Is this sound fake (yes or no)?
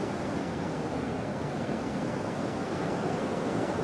yes